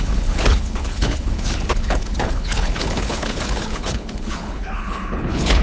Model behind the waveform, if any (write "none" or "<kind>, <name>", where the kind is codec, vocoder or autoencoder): codec, HILCodec